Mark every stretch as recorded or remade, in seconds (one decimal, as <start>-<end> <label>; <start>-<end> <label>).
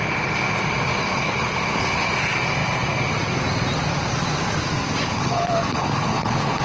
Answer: 0.0-1.1 recorded; 1.1-2.1 remade; 2.1-5.0 recorded; 5.0-6.6 remade